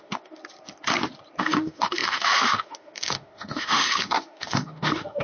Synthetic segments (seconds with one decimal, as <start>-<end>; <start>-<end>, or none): 0.0-0.4; 1.4-5.2